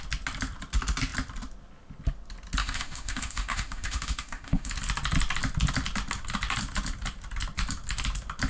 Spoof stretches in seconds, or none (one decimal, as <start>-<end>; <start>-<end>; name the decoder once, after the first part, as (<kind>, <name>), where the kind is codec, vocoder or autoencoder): 2.6-4.7 (autoencoder, DAC-VAE)